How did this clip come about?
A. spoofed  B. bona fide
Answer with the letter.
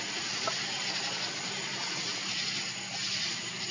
B